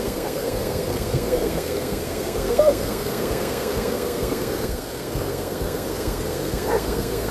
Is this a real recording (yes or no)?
no